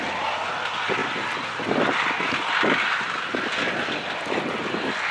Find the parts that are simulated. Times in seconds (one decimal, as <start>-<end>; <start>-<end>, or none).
none